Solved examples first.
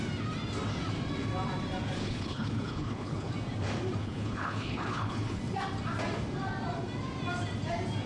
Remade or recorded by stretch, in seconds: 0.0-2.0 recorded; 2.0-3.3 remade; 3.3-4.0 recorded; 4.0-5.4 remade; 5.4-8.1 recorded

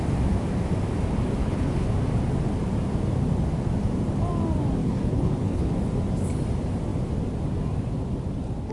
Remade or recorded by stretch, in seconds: 0.0-1.4 recorded; 1.4-1.9 remade; 1.9-4.8 recorded; 4.8-5.7 remade; 5.7-8.7 recorded

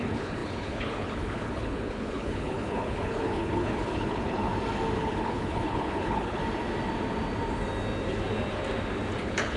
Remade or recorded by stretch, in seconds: 0.0-4.5 remade; 4.5-5.0 recorded; 5.0-6.4 remade; 6.4-9.2 recorded; 9.2-9.6 remade